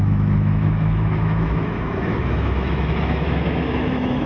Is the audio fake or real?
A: fake